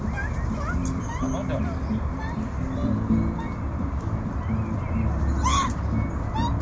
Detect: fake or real real